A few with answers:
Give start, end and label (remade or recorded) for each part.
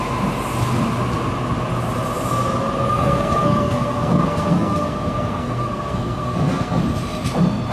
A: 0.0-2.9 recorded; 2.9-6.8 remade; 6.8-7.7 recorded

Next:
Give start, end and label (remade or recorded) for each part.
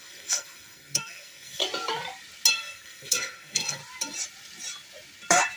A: 0.0-1.6 remade; 1.6-2.5 recorded; 2.5-3.8 remade; 3.8-5.6 recorded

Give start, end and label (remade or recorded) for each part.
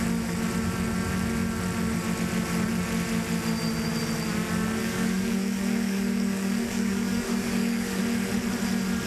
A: 0.0-4.8 recorded; 4.8-8.0 remade; 8.0-9.1 recorded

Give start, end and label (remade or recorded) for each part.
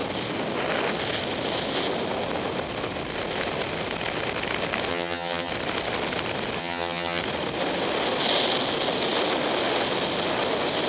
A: 0.0-4.9 recorded; 4.9-5.5 remade; 5.5-6.6 recorded; 6.6-7.2 remade; 7.2-10.9 recorded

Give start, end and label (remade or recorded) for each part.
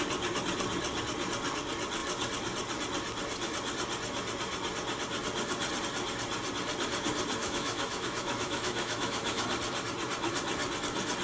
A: 0.0-7.4 recorded; 7.4-9.5 remade; 9.5-11.2 recorded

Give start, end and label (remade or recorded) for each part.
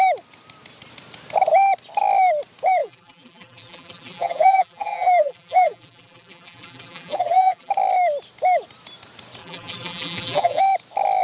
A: 0.0-2.8 recorded; 2.8-7.7 remade; 7.7-9.4 recorded; 9.4-10.6 remade; 10.6-11.2 recorded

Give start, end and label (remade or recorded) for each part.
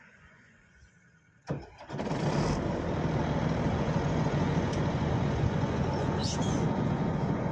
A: 0.0-0.8 remade; 0.8-3.7 recorded; 3.7-7.5 remade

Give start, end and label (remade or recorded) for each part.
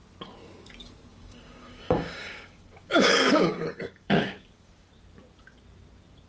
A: 0.0-1.1 recorded; 1.1-4.9 remade; 4.9-6.3 recorded